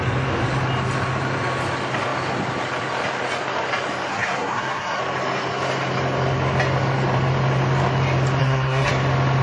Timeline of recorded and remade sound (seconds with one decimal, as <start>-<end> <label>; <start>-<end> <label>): 0.0-4.1 recorded; 4.1-5.0 remade; 5.0-8.4 recorded; 8.4-8.9 remade; 8.9-9.4 recorded